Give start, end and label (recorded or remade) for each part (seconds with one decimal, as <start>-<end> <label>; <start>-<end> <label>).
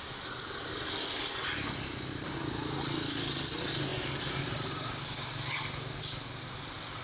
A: 0.0-7.0 recorded